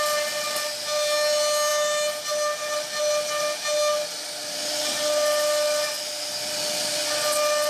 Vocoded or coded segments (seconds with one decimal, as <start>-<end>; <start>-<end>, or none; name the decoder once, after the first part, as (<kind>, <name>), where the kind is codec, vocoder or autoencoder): none